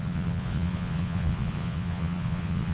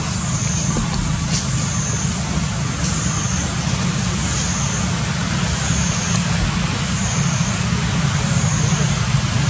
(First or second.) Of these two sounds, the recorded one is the second